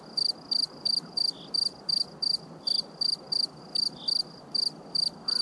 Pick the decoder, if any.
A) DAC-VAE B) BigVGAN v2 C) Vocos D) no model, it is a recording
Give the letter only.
D